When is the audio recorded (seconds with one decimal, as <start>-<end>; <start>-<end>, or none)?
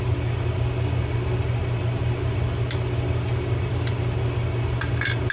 0.0-5.3